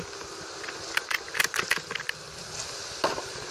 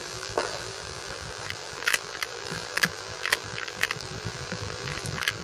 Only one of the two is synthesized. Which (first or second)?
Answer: second